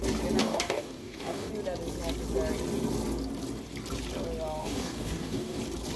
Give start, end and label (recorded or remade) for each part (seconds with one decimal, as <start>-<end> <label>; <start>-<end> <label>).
0.0-0.4 recorded; 0.4-1.5 remade; 1.5-4.6 recorded; 4.6-5.6 remade; 5.6-6.0 recorded